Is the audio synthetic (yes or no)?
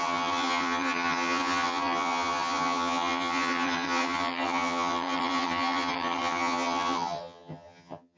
yes